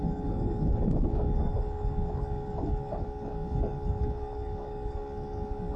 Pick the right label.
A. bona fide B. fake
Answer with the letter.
B